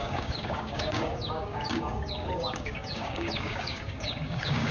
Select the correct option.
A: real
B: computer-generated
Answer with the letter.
B